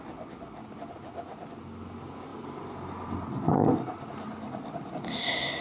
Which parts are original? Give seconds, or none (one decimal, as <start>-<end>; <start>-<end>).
0.0-5.6